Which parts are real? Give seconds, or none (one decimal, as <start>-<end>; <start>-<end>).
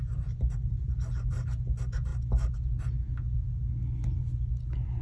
0.0-5.0